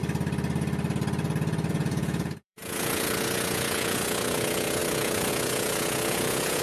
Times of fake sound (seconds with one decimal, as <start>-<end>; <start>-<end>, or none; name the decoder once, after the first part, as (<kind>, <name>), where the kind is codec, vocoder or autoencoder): 1.7-6.6 (vocoder, Vocos)